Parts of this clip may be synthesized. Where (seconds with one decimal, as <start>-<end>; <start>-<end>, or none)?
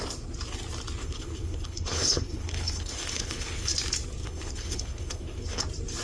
1.0-3.7; 4.2-5.6